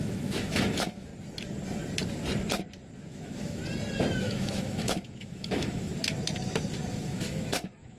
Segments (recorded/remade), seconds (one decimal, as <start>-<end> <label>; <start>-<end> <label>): 0.0-1.1 remade; 1.1-3.0 recorded; 3.0-3.6 remade; 3.6-4.2 recorded; 4.2-5.9 remade; 5.9-6.9 recorded; 6.9-8.0 remade